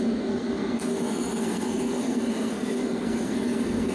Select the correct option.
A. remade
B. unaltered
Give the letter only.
A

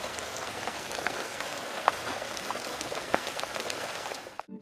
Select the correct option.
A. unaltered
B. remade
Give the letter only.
B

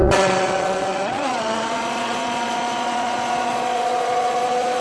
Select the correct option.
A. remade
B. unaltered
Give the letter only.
A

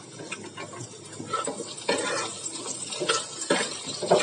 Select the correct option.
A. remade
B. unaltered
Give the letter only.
B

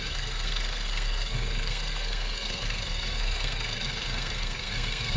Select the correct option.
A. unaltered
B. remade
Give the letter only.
B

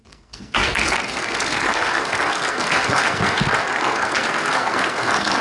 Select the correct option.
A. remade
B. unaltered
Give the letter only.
A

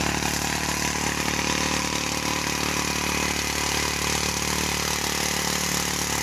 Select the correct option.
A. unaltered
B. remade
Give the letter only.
A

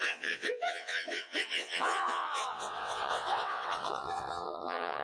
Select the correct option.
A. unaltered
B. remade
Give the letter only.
B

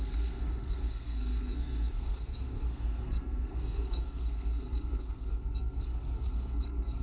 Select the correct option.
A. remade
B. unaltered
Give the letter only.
A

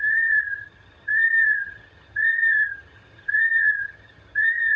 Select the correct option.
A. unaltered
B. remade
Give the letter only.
B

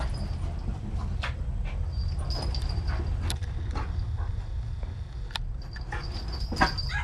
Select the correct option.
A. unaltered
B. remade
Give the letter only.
A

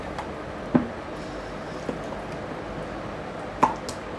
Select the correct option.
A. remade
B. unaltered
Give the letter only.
B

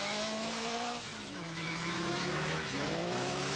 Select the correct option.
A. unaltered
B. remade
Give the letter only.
B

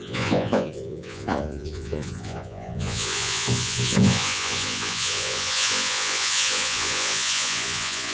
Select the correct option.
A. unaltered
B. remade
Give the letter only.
B